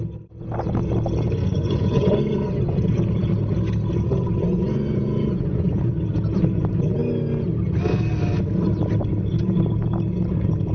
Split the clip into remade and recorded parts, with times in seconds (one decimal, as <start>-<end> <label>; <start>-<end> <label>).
0.0-1.5 recorded; 1.5-2.8 remade; 2.8-4.5 recorded; 4.5-6.0 remade; 6.0-10.7 recorded